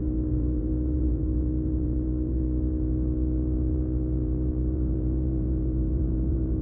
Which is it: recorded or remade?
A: remade